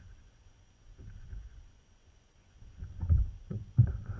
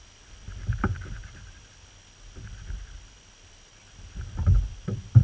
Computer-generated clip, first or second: first